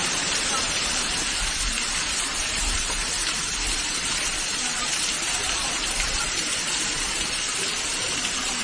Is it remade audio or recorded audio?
remade